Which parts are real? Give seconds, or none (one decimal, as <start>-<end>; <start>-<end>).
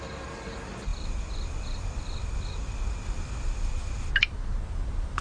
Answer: 0.0-5.2